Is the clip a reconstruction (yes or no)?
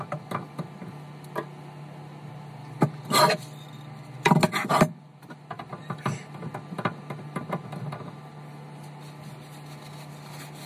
no